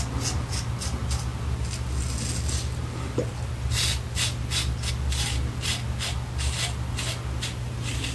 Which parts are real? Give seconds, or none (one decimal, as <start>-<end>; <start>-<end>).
0.0-8.1